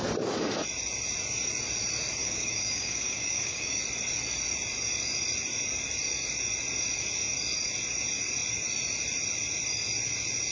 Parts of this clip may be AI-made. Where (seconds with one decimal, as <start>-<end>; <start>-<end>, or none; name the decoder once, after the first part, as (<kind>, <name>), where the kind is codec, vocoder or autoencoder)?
2.2-3.8 (codec, DAC)